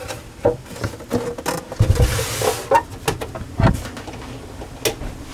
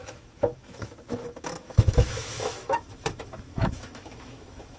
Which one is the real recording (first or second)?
first